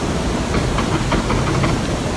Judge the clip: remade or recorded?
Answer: recorded